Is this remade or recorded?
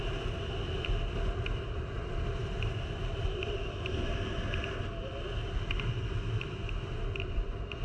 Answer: recorded